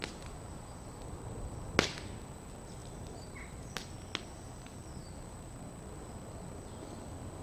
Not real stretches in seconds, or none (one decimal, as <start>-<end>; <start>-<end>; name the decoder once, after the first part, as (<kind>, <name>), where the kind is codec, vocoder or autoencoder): none